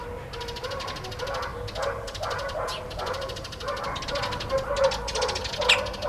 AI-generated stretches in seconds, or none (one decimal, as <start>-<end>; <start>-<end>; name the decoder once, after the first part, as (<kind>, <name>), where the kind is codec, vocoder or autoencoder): 1.5-3.8 (vocoder, BigVGAN v2)